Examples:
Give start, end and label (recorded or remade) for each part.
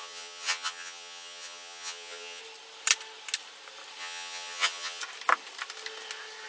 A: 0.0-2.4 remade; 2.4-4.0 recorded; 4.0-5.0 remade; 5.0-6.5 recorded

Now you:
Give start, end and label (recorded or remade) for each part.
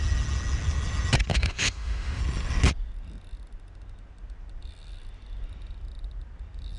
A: 0.0-1.3 recorded; 1.3-2.2 remade; 2.2-6.8 recorded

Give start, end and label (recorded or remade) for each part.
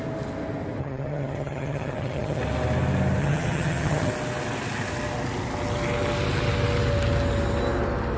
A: 0.0-0.8 recorded; 0.8-2.4 remade; 2.4-3.2 recorded; 3.2-4.1 remade; 4.1-8.2 recorded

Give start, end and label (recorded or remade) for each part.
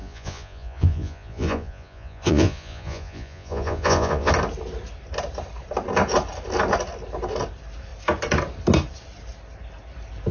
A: 0.0-4.3 remade; 4.3-10.3 recorded